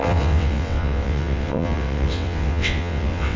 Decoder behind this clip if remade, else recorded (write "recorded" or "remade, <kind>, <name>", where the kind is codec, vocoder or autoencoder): remade, vocoder, WaveNeXt